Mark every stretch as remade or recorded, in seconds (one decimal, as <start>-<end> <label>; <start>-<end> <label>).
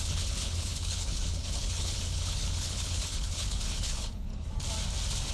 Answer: 0.0-4.3 remade; 4.3-5.3 recorded